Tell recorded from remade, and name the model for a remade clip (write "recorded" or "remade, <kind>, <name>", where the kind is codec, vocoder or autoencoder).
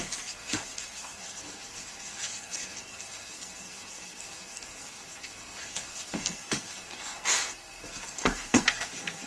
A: remade, codec, SNAC